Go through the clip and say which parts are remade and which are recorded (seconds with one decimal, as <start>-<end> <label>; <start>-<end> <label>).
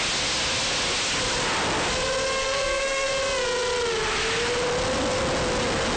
0.0-2.4 recorded; 2.4-3.1 remade; 3.1-6.0 recorded